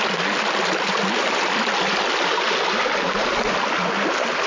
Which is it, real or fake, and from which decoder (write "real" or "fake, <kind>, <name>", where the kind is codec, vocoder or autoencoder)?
real